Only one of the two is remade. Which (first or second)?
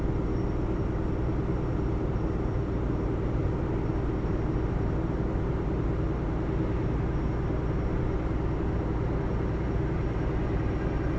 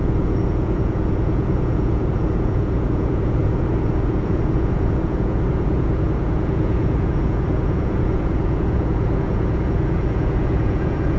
second